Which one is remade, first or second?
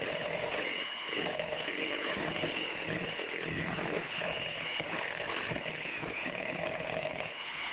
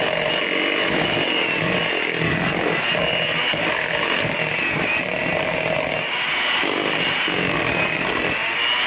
first